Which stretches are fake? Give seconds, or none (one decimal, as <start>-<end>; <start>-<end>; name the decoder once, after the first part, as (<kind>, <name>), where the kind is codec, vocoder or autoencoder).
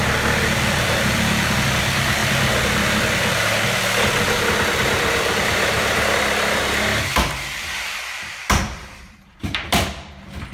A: 0.0-2.2 (vocoder, BigVGAN v2); 5.2-10.5